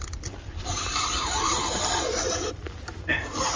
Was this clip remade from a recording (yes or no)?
no